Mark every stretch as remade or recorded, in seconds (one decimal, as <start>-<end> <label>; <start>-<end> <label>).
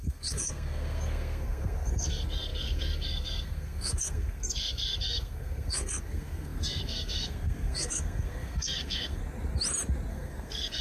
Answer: 0.0-9.2 remade; 9.2-10.1 recorded; 10.1-10.8 remade